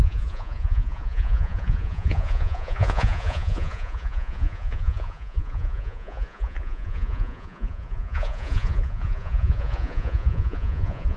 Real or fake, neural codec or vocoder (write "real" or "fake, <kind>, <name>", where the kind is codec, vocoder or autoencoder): fake, vocoder, Vocos